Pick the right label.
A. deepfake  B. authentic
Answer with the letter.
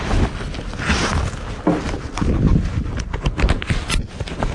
B